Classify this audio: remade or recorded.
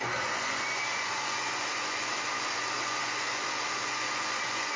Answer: remade